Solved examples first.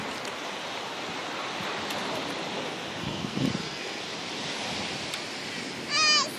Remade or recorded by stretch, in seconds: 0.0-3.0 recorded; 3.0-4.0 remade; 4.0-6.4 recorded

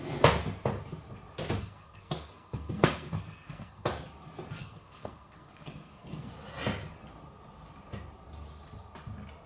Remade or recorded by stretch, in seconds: 0.0-1.6 recorded; 1.6-3.9 remade; 3.9-4.6 recorded; 4.6-6.3 remade; 6.3-9.5 recorded

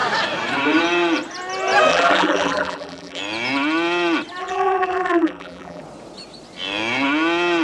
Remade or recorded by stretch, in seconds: 0.0-1.9 recorded; 1.9-3.2 remade; 3.2-4.4 recorded; 4.4-5.8 remade; 5.8-7.6 recorded

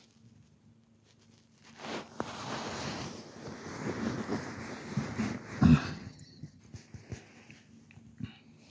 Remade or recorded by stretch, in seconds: 0.0-5.9 recorded; 5.9-6.6 remade; 6.6-8.7 recorded

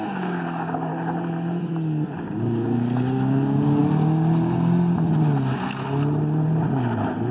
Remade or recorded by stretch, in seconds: 0.0-0.9 remade; 0.9-2.4 recorded; 2.4-3.8 remade; 3.8-7.3 recorded